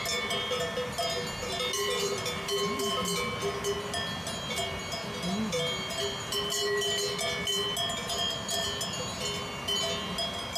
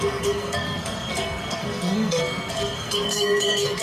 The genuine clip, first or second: first